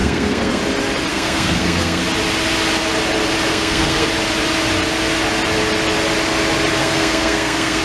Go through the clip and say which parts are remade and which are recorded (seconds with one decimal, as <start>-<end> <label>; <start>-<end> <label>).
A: 0.0-0.6 remade; 0.6-1.1 recorded; 1.1-2.0 remade; 2.0-3.5 recorded; 3.5-4.1 remade; 4.1-6.8 recorded; 6.8-7.8 remade

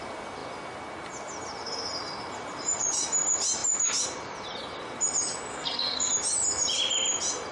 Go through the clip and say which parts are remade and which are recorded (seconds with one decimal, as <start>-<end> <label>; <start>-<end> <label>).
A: 0.0-5.5 recorded; 5.5-6.1 remade; 6.1-7.5 recorded

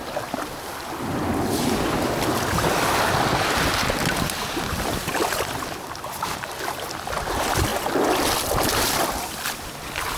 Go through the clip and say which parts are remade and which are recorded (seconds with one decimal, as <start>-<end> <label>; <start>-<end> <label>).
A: 0.0-10.2 recorded

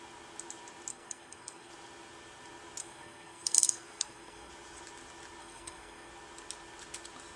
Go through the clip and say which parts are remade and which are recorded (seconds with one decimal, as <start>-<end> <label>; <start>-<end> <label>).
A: 0.0-0.9 recorded; 0.9-1.7 remade; 1.7-2.8 recorded; 2.8-4.5 remade; 4.5-5.4 recorded; 5.4-6.1 remade; 6.1-7.4 recorded

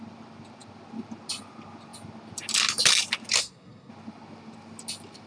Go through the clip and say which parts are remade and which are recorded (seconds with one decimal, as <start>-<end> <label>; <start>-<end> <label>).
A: 0.0-3.4 recorded; 3.4-3.9 remade; 3.9-5.3 recorded

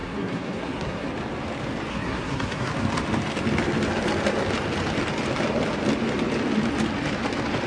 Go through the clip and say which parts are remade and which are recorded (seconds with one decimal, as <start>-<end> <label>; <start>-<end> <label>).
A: 0.0-1.1 remade; 1.1-1.9 recorded; 1.9-2.7 remade; 2.7-7.7 recorded